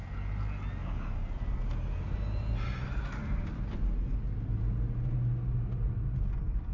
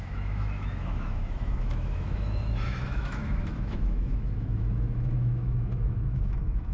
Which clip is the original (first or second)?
first